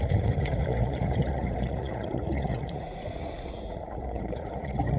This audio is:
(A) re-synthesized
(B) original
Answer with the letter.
A